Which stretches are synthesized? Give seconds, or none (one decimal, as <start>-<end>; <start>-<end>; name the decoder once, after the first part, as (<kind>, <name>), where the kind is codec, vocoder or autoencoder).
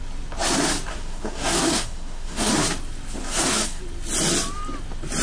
0.9-2.5 (codec, SNAC); 3.2-3.8